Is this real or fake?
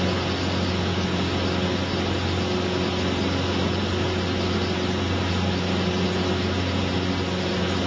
real